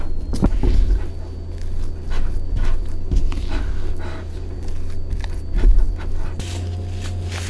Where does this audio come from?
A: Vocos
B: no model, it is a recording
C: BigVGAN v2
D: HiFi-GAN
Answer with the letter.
B